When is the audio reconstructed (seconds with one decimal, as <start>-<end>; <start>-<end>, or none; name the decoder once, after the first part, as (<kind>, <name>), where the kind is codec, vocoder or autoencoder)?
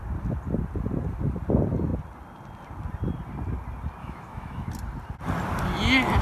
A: 4.0-4.7 (autoencoder, DAC-VAE)